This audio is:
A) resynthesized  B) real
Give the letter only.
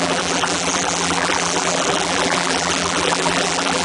A